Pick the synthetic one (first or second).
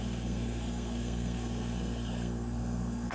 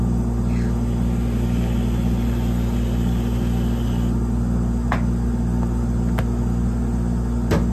first